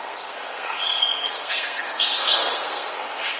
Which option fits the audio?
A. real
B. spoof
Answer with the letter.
B